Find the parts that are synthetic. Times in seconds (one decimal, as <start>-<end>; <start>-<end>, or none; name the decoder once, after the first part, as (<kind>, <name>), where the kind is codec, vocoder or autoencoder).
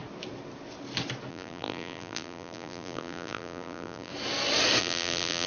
1.3-4.1 (vocoder, BigVGAN v2); 4.8-5.5